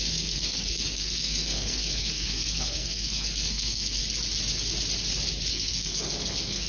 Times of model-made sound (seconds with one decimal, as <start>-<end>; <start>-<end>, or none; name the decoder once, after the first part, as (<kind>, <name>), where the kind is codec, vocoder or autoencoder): 0.0-4.0 (codec, SNAC); 5.5-6.7